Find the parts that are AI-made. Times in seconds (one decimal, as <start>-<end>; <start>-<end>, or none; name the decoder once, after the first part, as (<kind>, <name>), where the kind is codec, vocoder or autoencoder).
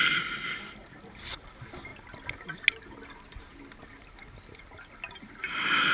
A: none